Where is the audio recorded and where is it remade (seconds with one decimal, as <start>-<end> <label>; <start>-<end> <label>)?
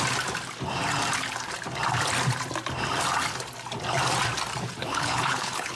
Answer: 0.0-4.8 recorded; 4.8-5.8 remade